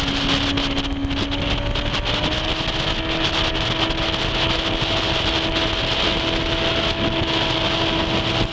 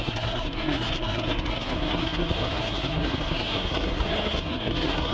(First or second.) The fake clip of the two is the second